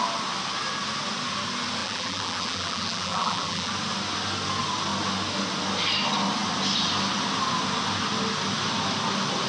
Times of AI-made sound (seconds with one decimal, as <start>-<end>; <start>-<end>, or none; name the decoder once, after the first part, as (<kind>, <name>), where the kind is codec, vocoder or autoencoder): 1.8-3.7 (vocoder, BigVGAN v2)